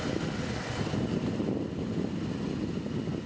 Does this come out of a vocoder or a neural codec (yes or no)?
no